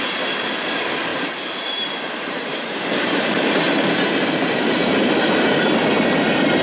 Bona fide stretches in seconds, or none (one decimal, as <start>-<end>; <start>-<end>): 0.0-1.1; 5.1-6.6

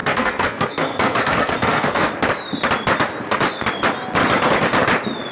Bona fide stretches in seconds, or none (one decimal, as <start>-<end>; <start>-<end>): 2.1-5.3

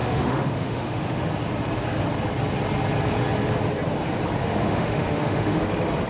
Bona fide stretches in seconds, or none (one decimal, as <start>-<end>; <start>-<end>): 1.3-4.4; 5.6-6.1

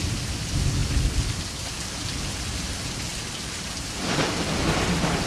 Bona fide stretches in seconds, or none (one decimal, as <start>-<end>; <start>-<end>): 0.0-3.1; 4.0-5.3